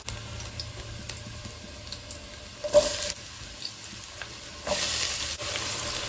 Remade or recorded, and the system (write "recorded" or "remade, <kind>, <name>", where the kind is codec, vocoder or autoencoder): recorded